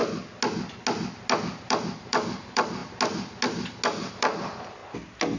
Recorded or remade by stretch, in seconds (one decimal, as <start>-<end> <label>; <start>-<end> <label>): 0.0-1.7 recorded; 1.7-2.8 remade; 2.8-4.1 recorded; 4.1-4.8 remade; 4.8-5.4 recorded